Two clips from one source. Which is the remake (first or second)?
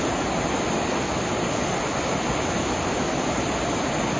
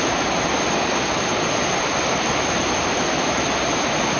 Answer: second